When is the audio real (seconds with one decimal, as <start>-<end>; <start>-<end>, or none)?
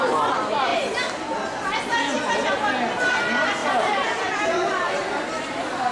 0.7-3.1